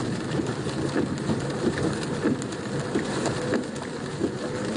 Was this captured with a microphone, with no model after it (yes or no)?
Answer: yes